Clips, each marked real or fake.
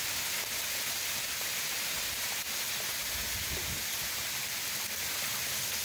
real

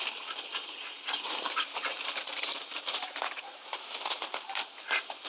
fake